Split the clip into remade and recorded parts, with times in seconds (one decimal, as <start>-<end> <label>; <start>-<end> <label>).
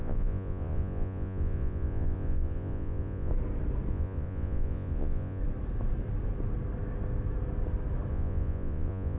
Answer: 0.0-3.3 remade; 3.3-3.9 recorded; 3.9-5.4 remade; 5.4-8.1 recorded; 8.1-9.2 remade